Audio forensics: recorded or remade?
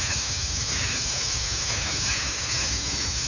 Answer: remade